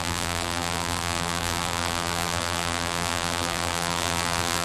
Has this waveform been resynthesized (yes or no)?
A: yes